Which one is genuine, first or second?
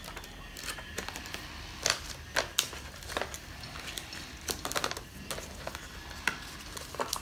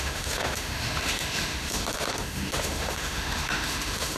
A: first